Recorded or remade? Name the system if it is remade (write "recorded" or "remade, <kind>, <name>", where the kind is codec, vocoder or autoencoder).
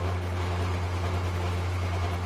recorded